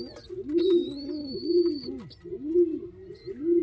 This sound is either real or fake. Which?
real